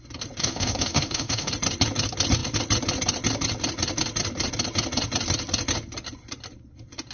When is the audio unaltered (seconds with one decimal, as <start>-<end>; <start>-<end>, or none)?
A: 0.0-0.4; 1.5-7.1